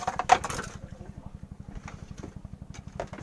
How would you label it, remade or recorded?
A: recorded